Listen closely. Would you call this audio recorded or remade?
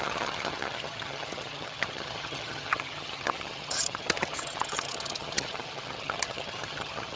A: remade